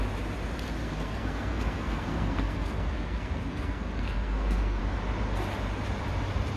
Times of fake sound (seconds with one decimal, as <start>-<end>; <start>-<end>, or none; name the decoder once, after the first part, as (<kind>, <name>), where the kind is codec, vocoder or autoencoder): 0.8-4.8 (codec, SNAC)